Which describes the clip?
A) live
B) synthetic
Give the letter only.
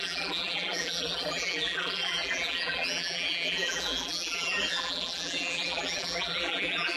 B